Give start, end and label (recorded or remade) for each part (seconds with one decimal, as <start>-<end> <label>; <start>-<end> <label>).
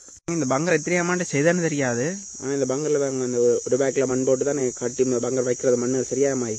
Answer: 0.0-0.7 remade; 0.7-2.4 recorded; 2.4-4.1 remade; 4.1-6.6 recorded